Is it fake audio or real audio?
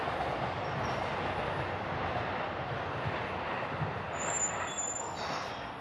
real